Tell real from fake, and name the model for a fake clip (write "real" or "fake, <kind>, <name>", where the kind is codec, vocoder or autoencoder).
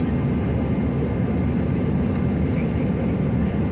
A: real